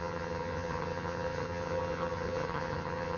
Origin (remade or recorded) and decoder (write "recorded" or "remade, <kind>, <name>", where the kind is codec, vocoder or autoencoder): remade, vocoder, HiFi-GAN